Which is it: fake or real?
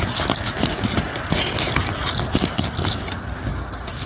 real